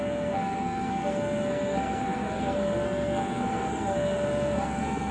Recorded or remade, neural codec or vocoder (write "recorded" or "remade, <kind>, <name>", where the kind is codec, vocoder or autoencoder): remade, codec, SNAC